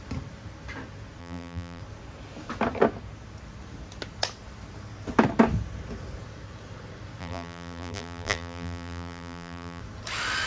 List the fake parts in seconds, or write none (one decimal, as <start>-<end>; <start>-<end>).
1.2-1.8; 7.2-9.8